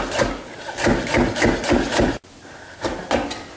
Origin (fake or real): real